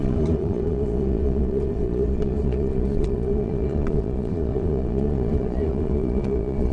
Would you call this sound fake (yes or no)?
yes